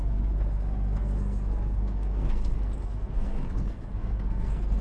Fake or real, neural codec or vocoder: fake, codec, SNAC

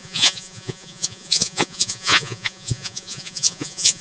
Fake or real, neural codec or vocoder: fake, vocoder, Vocos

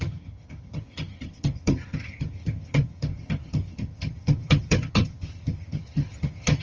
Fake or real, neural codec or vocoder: fake, vocoder, HiFi-GAN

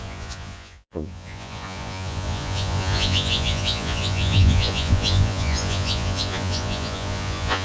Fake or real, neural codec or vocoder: fake, vocoder, Vocos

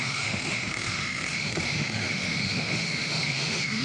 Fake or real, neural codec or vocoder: fake, autoencoder, DAC-VAE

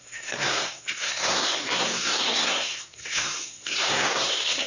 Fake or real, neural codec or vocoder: fake, codec, SNAC